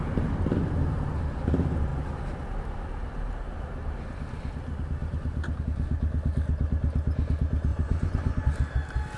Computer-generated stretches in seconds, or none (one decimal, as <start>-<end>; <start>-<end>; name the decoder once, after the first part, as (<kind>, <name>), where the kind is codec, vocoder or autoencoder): 7.7-8.4 (vocoder, Vocos)